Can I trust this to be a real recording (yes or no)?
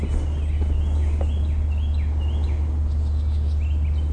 yes